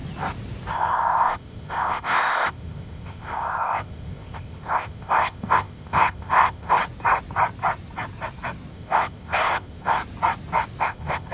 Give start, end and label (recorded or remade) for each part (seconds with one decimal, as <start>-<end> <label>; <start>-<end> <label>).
0.0-0.7 recorded; 0.7-6.8 remade; 6.8-8.7 recorded; 8.7-10.0 remade; 10.0-10.8 recorded; 10.8-11.3 remade